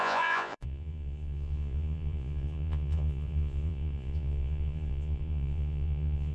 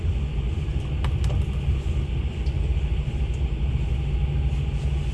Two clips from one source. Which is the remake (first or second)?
first